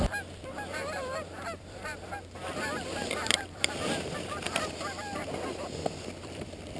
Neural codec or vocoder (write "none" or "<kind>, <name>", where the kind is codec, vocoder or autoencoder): vocoder, BigVGAN v2